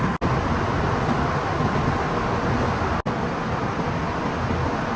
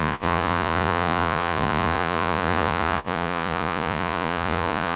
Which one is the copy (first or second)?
second